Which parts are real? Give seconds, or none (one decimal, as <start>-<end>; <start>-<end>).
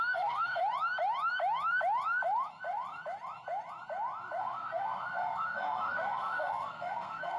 0.6-4.4